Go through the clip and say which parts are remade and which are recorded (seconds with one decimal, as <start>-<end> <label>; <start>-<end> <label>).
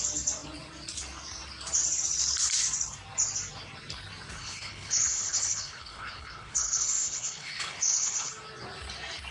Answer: 0.0-4.4 recorded; 4.4-8.3 remade; 8.3-9.3 recorded